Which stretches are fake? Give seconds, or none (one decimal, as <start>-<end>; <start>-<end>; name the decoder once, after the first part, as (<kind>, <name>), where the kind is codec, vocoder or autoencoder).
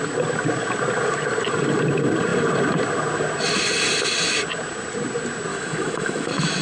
5.5-6.6 (autoencoder, DAC-VAE)